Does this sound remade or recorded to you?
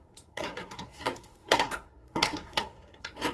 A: remade